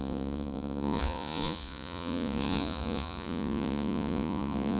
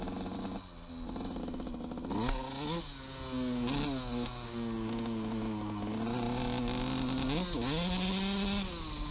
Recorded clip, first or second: second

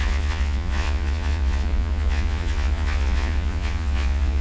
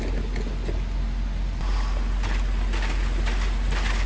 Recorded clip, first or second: second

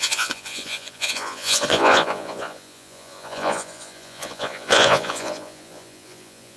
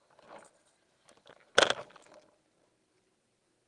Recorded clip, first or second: second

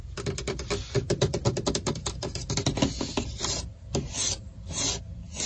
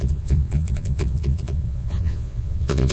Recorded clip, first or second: first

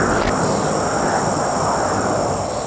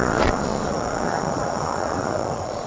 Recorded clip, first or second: first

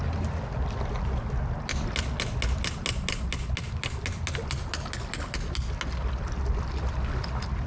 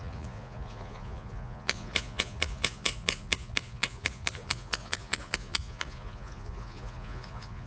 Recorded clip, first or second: first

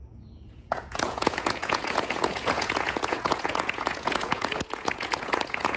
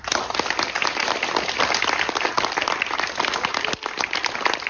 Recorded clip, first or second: second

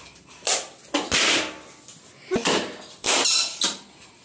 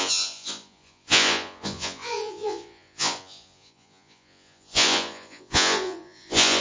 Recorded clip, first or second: first